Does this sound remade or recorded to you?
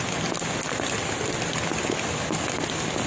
recorded